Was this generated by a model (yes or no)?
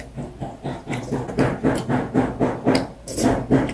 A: no